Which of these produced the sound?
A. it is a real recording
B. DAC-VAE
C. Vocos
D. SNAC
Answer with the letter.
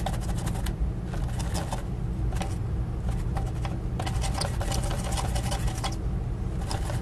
A